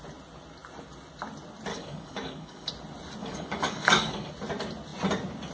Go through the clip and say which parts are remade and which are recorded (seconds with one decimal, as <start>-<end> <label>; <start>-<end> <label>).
0.0-1.7 recorded; 1.7-2.7 remade; 2.7-3.2 recorded; 3.2-4.3 remade; 4.3-5.5 recorded